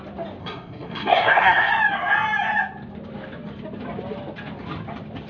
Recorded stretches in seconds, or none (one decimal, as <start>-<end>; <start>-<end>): 0.0-0.4; 1.7-5.3